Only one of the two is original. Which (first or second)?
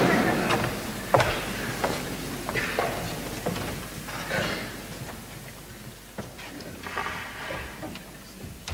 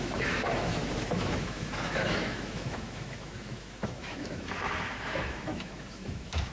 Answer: first